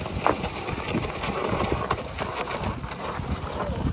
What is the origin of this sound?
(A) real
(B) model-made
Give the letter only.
A